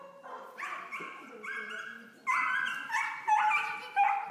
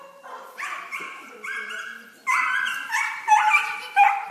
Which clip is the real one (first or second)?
first